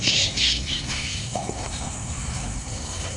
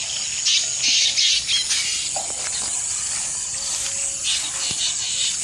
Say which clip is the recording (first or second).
second